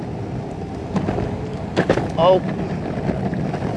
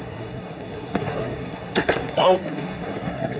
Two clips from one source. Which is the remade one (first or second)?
second